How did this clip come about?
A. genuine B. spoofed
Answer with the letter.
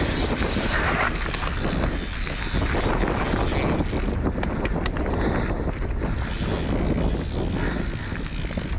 A